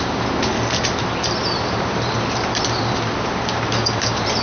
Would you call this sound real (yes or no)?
yes